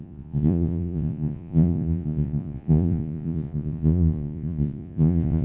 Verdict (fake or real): fake